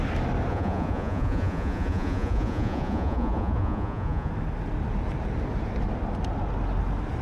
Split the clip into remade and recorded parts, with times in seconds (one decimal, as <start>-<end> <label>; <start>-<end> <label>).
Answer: 0.0-0.5 recorded; 0.5-4.3 remade; 4.3-7.2 recorded